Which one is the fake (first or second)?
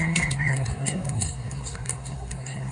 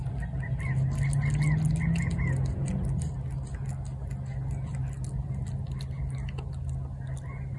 first